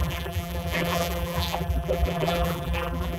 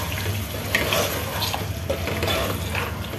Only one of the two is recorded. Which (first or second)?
second